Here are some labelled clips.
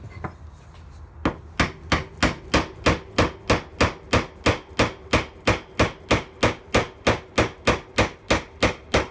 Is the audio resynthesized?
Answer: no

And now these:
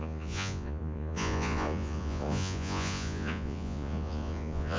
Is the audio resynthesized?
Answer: yes